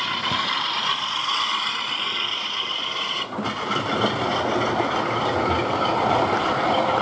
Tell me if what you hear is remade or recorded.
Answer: recorded